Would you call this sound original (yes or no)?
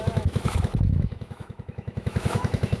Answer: no